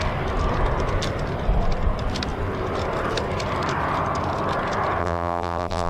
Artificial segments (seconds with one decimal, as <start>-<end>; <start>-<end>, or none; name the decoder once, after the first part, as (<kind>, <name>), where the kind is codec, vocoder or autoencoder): 5.0-5.9 (vocoder, BigVGAN v2)